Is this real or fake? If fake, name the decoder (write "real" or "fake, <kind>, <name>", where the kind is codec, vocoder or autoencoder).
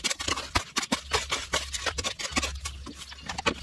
real